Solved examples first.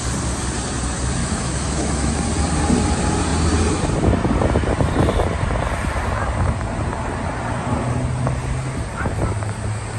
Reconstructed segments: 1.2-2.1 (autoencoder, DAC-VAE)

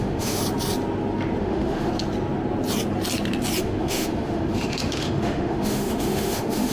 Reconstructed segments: 0.0-0.4 (autoencoder, DAC-VAE); 1.4-1.9; 3.6-6.7

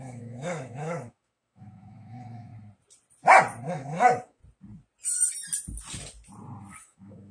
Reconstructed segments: 0.0-2.5 (autoencoder, DAC-VAE); 3.7-4.4; 6.7-7.3

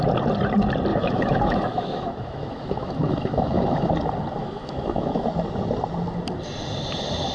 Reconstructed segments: 0.9-3.9 (autoencoder, DAC-VAE); 4.4-5.3

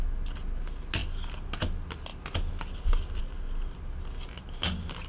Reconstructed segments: none

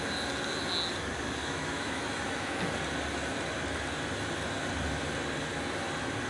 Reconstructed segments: 1.4-2.6 (autoencoder, DAC-VAE)

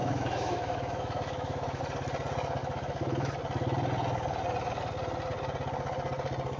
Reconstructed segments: 0.0-1.8 (autoencoder, DAC-VAE); 2.6-3.3